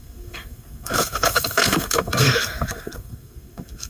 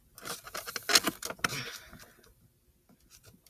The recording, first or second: second